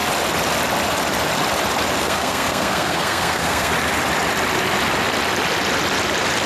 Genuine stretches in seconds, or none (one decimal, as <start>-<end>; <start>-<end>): 0.0-2.0; 3.7-6.5